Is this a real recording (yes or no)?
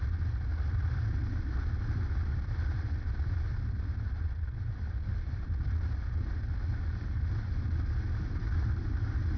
yes